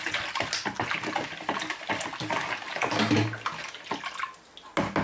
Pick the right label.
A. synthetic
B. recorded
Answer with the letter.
B